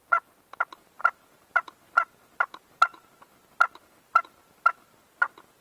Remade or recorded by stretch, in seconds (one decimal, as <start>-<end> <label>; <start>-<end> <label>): 0.0-5.6 recorded